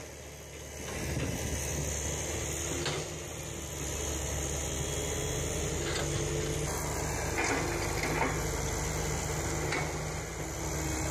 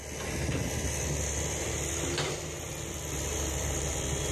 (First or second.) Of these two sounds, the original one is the first